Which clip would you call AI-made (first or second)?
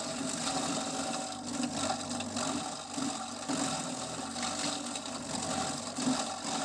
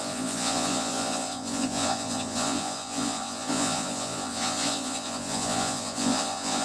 second